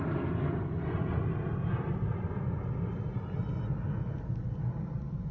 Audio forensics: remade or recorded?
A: recorded